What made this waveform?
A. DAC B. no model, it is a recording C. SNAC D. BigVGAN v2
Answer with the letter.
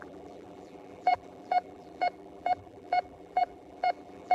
D